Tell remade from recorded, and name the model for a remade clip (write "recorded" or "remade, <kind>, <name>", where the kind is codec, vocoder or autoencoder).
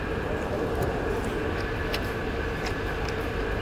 recorded